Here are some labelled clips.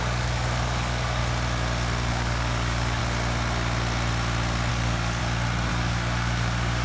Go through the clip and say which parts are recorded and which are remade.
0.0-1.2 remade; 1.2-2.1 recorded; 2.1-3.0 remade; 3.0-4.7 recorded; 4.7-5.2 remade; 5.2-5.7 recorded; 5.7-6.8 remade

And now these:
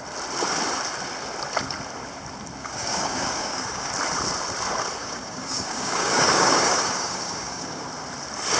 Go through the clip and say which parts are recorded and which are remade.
0.0-2.6 recorded; 2.6-3.9 remade; 3.9-5.0 recorded; 5.0-7.8 remade; 7.8-8.6 recorded